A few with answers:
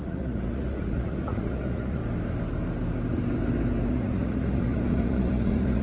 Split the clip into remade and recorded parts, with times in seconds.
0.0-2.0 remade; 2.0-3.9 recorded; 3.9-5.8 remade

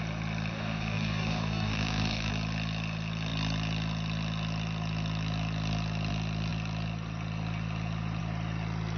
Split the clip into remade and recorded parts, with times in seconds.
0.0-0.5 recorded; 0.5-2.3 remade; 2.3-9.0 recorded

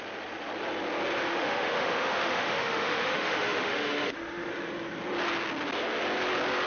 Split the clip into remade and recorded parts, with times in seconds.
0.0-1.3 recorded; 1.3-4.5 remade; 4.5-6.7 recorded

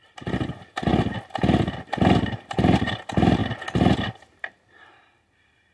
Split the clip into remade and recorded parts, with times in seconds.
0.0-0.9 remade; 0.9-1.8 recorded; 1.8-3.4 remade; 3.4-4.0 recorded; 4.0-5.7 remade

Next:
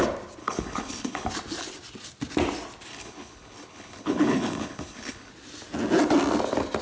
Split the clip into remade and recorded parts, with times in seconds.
0.0-0.4 recorded; 0.4-1.3 remade; 1.3-2.9 recorded; 2.9-5.3 remade; 5.3-6.8 recorded

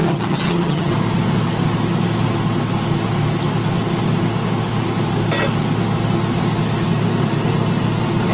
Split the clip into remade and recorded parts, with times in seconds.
0.0-0.9 remade; 0.9-8.3 recorded